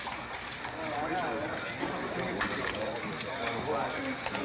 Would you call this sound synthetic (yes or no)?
no